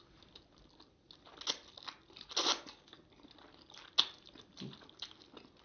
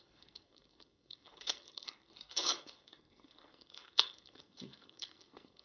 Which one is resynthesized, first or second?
second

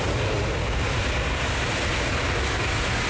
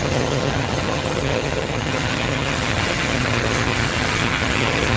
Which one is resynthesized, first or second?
second